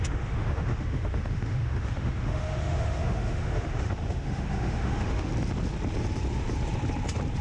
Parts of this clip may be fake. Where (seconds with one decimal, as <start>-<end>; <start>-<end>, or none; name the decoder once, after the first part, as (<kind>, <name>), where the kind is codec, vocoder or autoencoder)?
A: 0.0-5.3 (autoencoder, DAC-VAE)